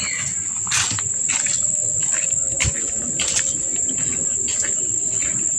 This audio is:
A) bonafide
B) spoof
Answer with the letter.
A